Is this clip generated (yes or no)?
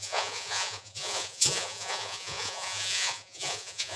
yes